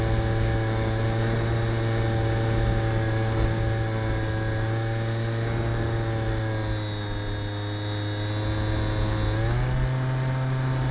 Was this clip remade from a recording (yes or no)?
no